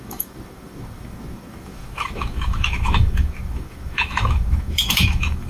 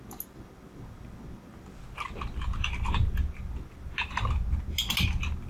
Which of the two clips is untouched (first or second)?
second